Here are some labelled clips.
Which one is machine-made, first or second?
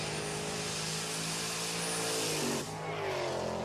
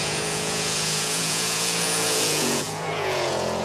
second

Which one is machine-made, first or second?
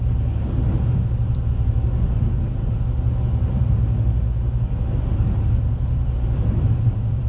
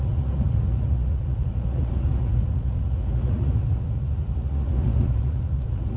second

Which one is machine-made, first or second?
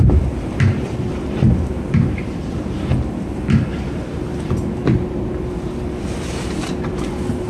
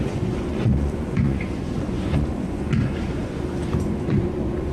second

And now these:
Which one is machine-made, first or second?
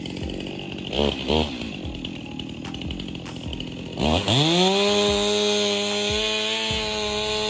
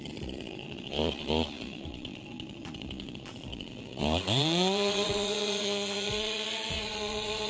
second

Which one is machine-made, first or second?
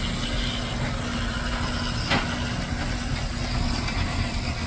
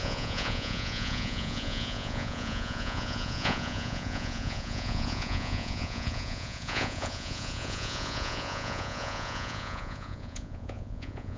second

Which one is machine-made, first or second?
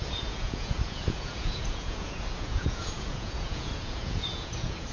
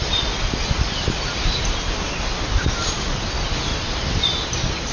first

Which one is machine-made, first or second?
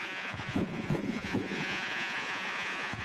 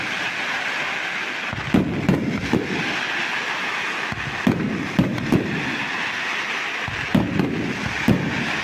first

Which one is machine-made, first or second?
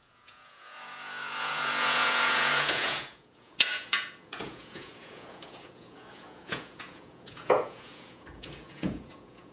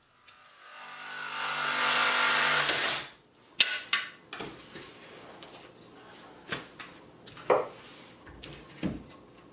first